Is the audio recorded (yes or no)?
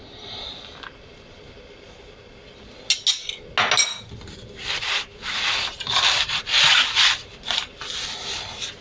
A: yes